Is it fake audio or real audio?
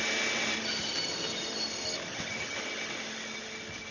real